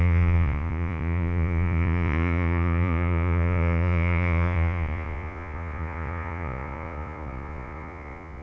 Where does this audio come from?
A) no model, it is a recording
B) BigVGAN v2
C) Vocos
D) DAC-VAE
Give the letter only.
C